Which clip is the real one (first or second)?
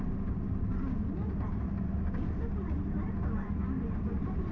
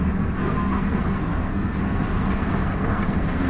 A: first